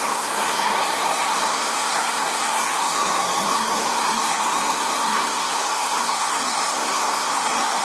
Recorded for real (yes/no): no